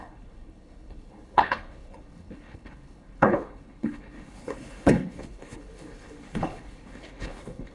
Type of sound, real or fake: fake